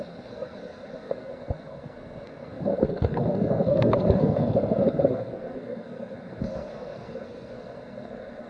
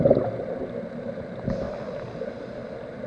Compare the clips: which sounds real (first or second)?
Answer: second